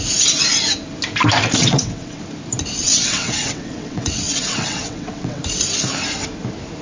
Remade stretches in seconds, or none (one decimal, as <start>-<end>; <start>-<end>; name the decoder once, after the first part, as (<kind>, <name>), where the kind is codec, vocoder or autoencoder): 1.6-2.2 (vocoder, WaveNeXt); 2.8-5.4